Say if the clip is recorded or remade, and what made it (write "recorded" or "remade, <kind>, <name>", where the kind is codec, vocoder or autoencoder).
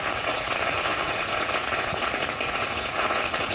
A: remade, vocoder, Vocos